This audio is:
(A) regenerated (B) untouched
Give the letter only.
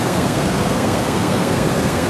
A